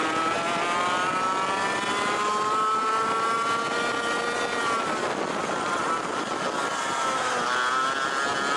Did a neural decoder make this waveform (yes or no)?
no